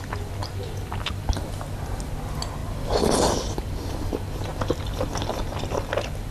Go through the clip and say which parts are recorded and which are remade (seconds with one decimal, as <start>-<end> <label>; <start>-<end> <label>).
0.0-0.4 recorded; 0.4-1.1 remade; 1.1-6.3 recorded